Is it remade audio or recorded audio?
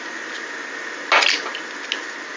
recorded